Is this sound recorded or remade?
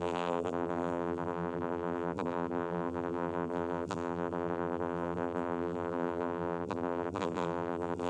remade